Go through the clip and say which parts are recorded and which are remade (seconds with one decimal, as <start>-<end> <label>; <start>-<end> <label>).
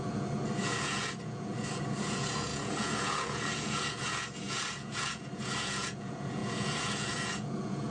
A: 0.0-7.9 remade